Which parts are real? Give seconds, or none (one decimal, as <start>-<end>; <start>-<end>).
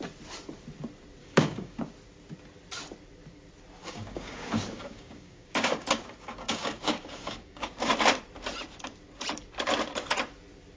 0.0-1.2; 1.8-3.8; 7.9-10.8